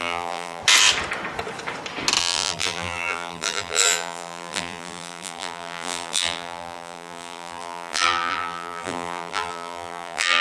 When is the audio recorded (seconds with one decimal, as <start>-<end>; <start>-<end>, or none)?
0.6-2.2